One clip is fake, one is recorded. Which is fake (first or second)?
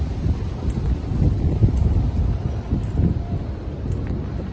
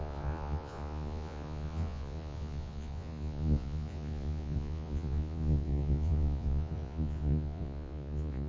second